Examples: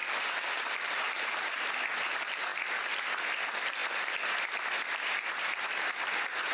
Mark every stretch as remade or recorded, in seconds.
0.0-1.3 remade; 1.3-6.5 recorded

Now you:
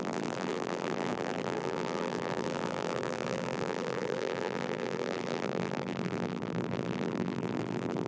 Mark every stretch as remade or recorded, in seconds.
0.0-8.1 remade